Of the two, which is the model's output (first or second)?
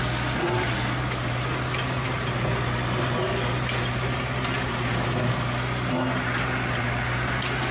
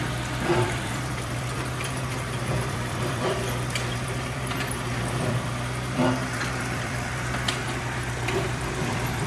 second